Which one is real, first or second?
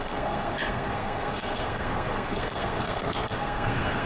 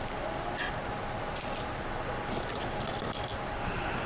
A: second